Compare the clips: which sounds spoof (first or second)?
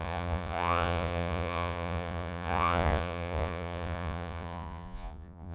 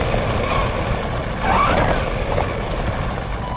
first